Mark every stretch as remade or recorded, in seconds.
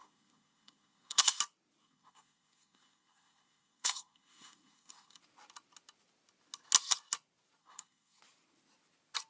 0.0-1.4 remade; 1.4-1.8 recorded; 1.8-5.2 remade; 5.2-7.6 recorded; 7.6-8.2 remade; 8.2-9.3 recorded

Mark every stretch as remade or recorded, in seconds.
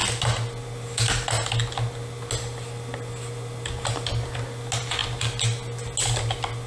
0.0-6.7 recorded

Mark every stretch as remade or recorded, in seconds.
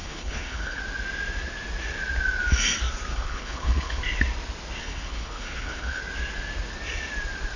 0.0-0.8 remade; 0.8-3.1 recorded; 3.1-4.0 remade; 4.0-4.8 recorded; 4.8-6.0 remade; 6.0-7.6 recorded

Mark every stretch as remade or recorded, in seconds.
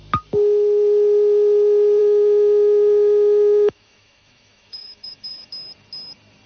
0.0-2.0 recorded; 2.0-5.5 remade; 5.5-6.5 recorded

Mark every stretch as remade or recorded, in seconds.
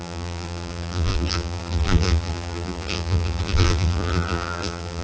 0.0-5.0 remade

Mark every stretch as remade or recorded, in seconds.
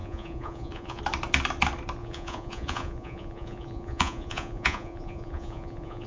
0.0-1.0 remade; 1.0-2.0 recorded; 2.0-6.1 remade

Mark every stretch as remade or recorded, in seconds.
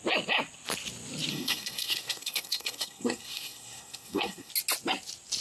0.0-1.3 recorded; 1.3-4.5 remade; 4.5-5.4 recorded